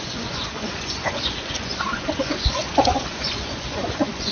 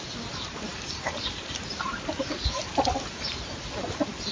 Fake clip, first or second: first